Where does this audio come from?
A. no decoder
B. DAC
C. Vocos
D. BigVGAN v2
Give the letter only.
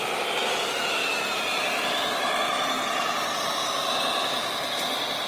A